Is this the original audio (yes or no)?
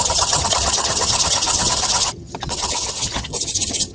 no